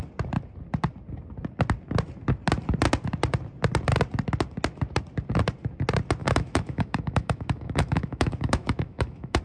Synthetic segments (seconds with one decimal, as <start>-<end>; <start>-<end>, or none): 6.2-9.4